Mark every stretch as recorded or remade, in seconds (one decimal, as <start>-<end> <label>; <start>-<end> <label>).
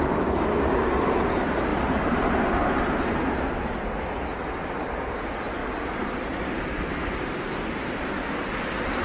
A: 0.0-1.7 recorded; 1.7-2.8 remade; 2.8-5.6 recorded; 5.6-6.1 remade; 6.1-9.0 recorded